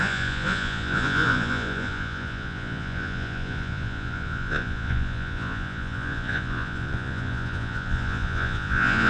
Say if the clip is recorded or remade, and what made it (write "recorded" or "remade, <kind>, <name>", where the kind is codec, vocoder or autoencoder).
remade, vocoder, Vocos